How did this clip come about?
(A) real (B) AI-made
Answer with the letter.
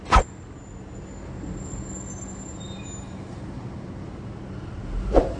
A